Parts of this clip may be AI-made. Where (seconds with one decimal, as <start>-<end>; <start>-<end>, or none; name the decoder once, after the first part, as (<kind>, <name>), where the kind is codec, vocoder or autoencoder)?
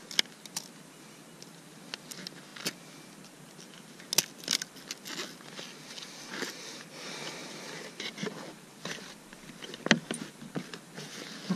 none